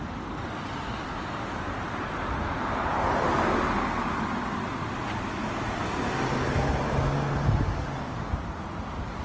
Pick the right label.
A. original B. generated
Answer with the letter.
A